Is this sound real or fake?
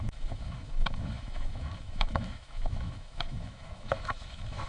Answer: fake